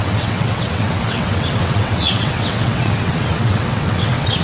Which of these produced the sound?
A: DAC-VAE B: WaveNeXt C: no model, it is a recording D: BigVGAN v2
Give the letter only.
B